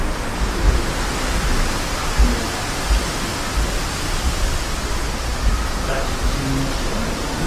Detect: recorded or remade recorded